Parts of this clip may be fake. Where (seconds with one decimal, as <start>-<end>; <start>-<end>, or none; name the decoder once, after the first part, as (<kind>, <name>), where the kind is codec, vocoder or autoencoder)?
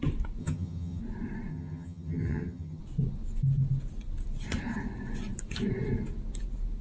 0.4-1.0 (vocoder, HiFi-GAN); 1.5-2.8